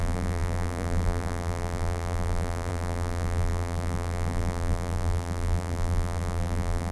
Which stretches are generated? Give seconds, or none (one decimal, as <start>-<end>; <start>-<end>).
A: 0.0-6.9